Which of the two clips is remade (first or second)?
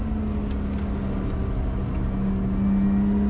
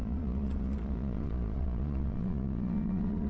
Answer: second